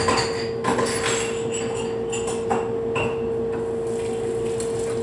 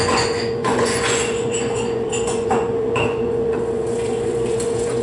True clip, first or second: first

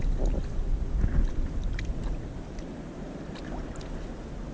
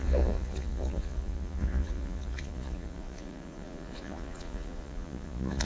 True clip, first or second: first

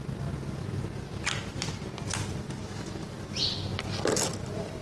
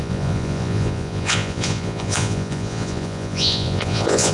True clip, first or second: first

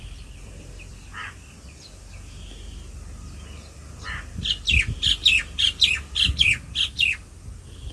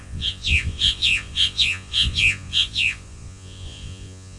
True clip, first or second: first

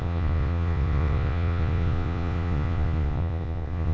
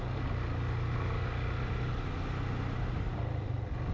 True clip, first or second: second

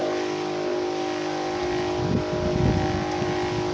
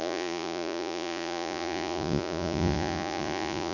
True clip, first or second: first